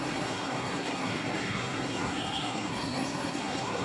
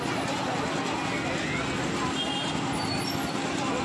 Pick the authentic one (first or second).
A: second